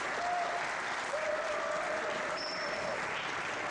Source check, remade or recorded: recorded